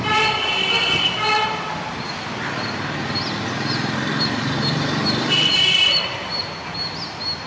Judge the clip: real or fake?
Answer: real